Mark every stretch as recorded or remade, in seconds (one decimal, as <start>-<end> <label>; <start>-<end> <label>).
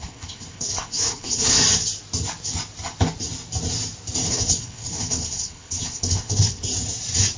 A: 0.0-1.6 remade; 1.6-4.3 recorded; 4.3-6.7 remade; 6.7-7.4 recorded